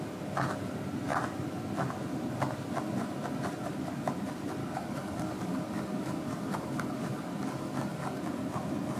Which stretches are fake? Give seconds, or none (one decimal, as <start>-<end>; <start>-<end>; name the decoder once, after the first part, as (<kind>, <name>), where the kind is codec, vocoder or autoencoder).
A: 4.6-8.2 (codec, DAC)